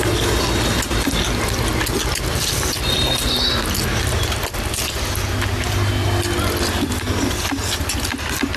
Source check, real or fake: real